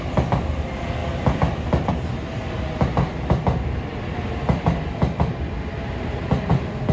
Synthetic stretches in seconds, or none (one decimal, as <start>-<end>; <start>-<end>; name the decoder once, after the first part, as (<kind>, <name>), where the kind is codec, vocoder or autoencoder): none